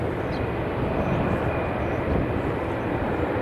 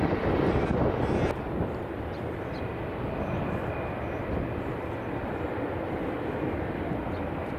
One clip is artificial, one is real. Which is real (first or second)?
second